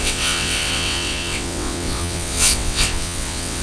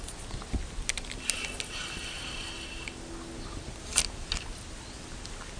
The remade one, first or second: first